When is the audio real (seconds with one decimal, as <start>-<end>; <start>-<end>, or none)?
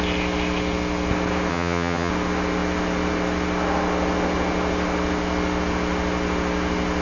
0.0-1.5; 2.1-7.0